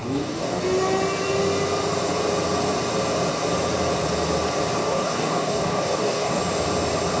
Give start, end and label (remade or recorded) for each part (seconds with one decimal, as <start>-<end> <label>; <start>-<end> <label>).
0.0-0.6 remade; 0.6-4.8 recorded; 4.8-6.4 remade; 6.4-7.2 recorded